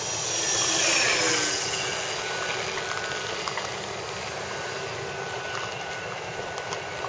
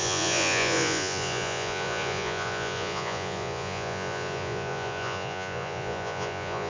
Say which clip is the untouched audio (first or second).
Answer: first